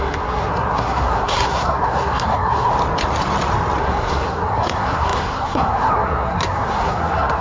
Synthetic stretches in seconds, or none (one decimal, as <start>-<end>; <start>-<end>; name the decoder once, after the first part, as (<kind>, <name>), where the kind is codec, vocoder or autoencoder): 0.0-2.7 (codec, SNAC); 3.8-7.4